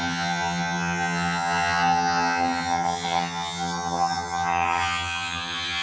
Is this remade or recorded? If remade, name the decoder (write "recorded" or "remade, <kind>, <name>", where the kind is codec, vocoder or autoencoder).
remade, vocoder, HiFi-GAN